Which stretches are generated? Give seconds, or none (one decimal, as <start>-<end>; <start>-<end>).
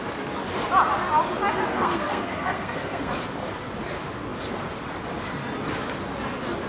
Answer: 1.7-3.1